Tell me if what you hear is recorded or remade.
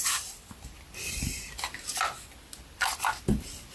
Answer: recorded